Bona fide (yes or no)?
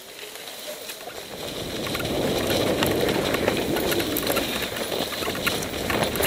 yes